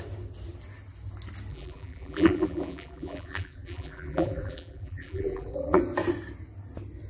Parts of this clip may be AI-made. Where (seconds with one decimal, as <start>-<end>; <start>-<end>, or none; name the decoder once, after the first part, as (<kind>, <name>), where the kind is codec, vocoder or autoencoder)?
1.5-5.8 (vocoder, BigVGAN v2)